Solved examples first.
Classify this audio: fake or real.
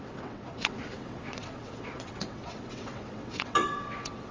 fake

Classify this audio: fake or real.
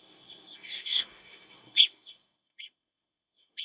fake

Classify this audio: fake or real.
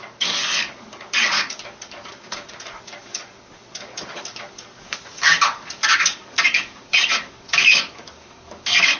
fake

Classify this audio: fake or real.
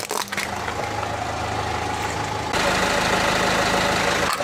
real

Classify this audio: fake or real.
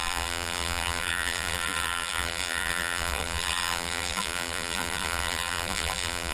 fake